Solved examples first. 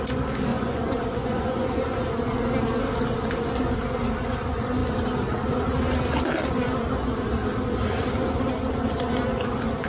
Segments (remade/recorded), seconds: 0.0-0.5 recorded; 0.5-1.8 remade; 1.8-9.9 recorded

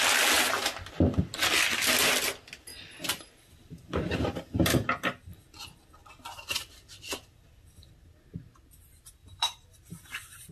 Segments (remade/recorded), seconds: 0.0-2.7 recorded; 2.7-5.4 remade; 5.4-6.0 recorded; 6.0-7.9 remade; 7.9-9.2 recorded; 9.2-10.5 remade

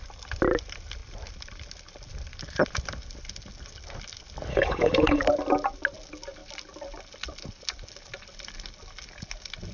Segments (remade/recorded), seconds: 0.0-4.5 recorded; 4.5-5.2 remade; 5.2-9.7 recorded